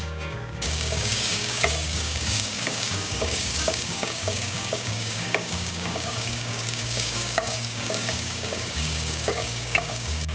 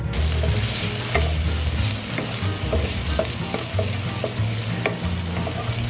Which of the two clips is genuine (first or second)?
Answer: second